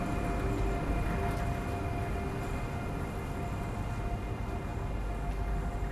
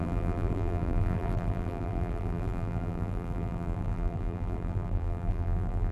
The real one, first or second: first